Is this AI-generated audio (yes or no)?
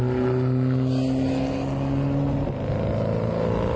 no